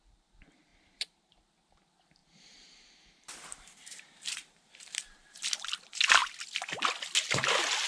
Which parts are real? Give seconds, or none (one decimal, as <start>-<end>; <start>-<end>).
0.0-0.7; 1.4-2.2; 5.4-7.9